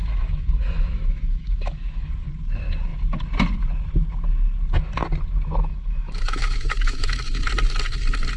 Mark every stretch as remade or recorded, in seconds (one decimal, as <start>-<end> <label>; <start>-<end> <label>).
0.0-2.1 remade; 2.1-5.7 recorded; 5.7-7.4 remade; 7.4-8.4 recorded